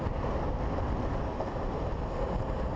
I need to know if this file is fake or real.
real